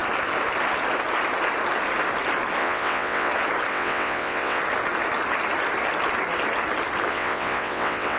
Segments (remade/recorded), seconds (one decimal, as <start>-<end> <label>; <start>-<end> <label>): 0.0-2.6 recorded; 2.6-3.3 remade; 3.3-3.7 recorded; 3.7-4.6 remade; 4.6-7.1 recorded; 7.1-8.2 remade